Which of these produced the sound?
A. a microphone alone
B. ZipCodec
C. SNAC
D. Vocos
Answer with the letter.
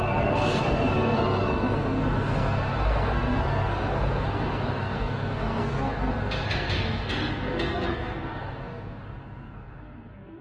C